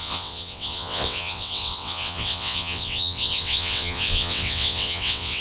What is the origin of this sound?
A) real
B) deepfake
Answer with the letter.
B